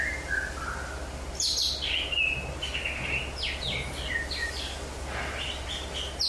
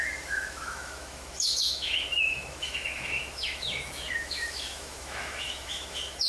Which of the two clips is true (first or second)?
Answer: first